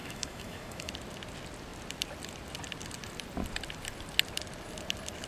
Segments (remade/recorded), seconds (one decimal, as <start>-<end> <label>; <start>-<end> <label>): 0.0-0.9 remade; 0.9-5.3 recorded